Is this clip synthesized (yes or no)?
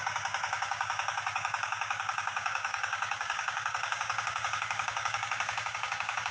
yes